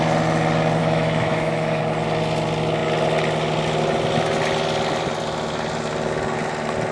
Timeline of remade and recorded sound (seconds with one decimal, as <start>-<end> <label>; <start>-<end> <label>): 0.0-0.8 recorded; 0.8-1.8 remade; 1.8-6.9 recorded